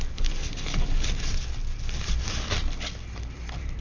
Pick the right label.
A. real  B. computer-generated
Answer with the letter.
A